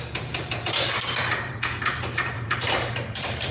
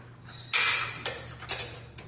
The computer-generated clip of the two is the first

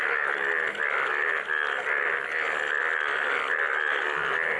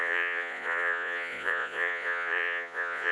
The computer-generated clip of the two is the second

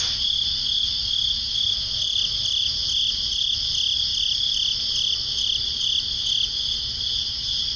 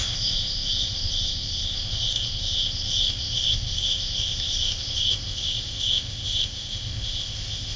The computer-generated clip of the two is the second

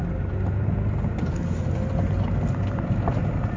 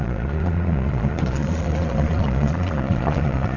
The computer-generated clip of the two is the second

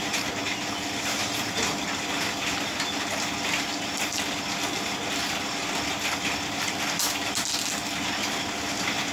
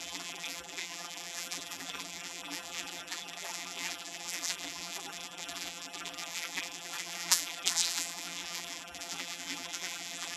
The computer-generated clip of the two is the second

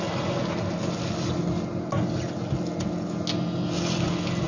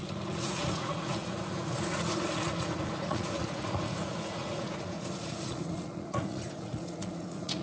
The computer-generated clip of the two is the second